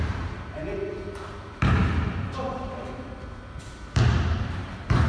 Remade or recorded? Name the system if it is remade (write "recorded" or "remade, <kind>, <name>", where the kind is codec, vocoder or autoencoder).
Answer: remade, vocoder, BigVGAN v2